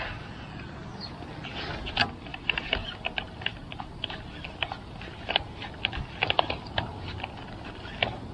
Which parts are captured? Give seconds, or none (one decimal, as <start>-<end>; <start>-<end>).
0.0-2.3; 4.2-8.3